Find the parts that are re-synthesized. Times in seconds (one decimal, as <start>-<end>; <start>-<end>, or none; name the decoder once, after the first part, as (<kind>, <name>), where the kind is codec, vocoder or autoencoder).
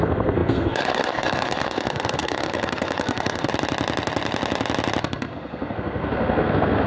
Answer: 0.0-3.5 (codec, SNAC); 5.0-6.9